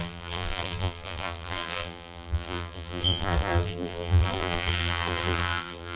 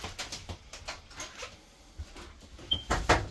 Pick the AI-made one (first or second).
first